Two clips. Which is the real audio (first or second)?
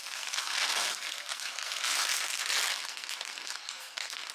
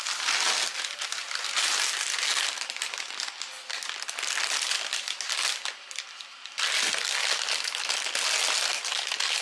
second